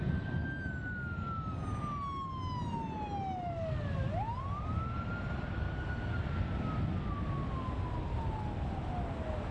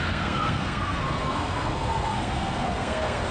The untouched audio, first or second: first